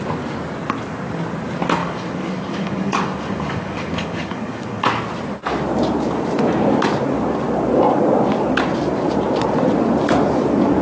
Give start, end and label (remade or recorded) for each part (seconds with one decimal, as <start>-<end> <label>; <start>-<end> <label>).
0.0-1.8 recorded; 1.8-4.8 remade; 4.8-10.8 recorded